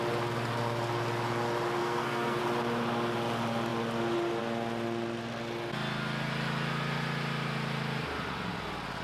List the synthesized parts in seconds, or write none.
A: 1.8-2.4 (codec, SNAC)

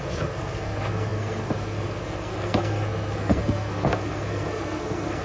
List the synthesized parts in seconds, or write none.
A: 0.0-5.2 (codec, SNAC)